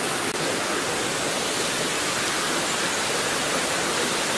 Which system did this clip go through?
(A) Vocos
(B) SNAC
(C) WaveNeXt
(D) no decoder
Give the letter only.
D